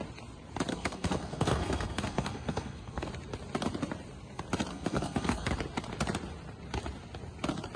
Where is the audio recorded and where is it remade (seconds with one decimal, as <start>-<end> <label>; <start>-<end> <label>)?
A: 0.0-0.7 recorded; 0.7-3.1 remade; 3.1-4.7 recorded; 4.7-5.5 remade; 5.5-7.8 recorded